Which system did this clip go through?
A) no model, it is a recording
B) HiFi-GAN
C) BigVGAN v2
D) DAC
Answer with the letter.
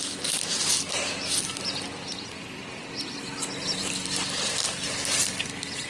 A